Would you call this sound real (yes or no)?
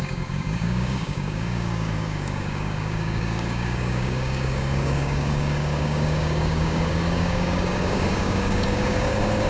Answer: no